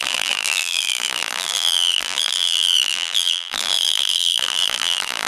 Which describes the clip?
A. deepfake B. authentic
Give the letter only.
A